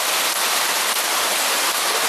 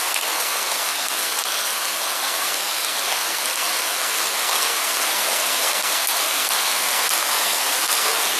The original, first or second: first